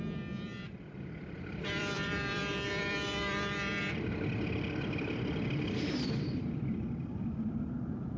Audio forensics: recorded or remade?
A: remade